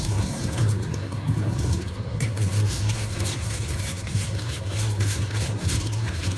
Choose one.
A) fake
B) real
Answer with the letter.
A